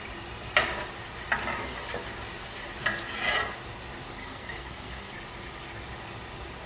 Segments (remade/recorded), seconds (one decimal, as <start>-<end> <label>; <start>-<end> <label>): 0.0-4.2 recorded; 4.2-5.1 remade; 5.1-6.7 recorded